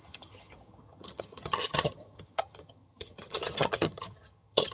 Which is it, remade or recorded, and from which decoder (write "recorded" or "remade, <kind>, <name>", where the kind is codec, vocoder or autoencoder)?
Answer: remade, vocoder, HiFi-GAN